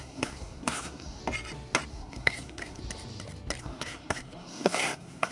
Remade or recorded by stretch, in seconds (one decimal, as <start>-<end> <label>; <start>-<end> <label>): 0.0-1.2 remade; 1.2-1.9 recorded; 1.9-2.8 remade; 2.8-3.6 recorded; 3.6-5.3 remade